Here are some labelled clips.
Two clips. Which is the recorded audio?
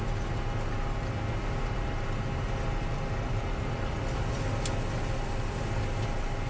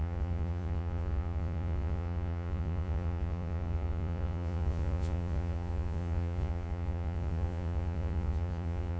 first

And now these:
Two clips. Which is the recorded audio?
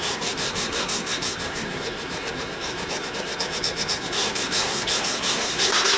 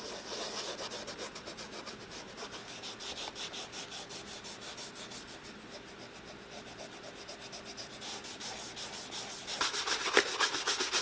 second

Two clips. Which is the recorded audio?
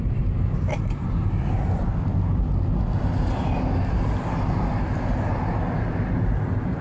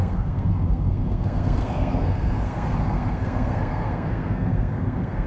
first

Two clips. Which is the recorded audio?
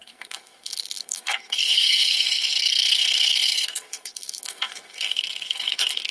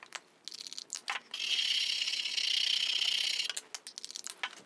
second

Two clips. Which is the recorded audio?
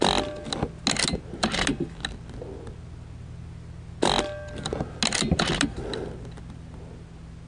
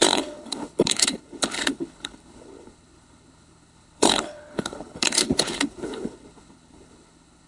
first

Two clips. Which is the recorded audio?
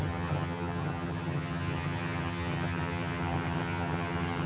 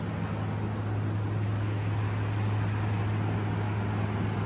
second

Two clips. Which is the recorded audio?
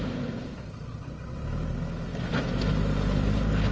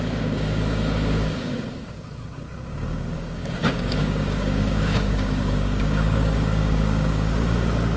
first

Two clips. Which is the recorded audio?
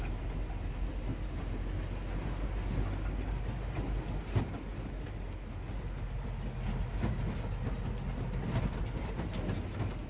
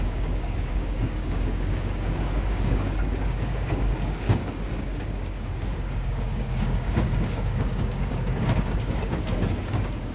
first